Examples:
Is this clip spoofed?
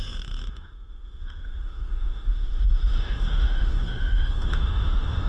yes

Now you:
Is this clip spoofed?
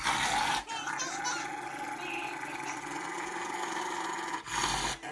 no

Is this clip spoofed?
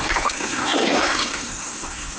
yes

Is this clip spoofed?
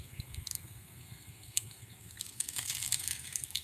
yes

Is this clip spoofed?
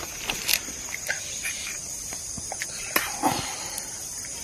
no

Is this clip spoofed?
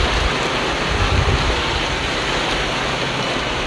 no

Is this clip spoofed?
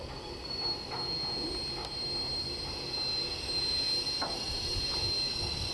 no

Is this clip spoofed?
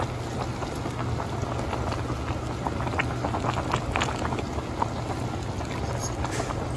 no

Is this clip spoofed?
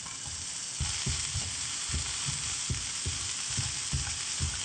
no